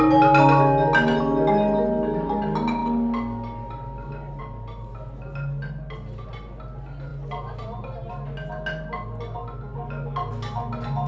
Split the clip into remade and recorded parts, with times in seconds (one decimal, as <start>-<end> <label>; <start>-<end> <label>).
0.0-11.1 recorded